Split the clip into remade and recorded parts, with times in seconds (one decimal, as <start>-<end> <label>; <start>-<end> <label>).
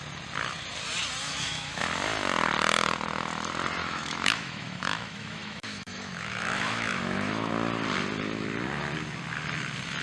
0.0-1.2 recorded; 1.2-1.8 remade; 1.8-3.8 recorded; 3.8-7.5 remade; 7.5-10.0 recorded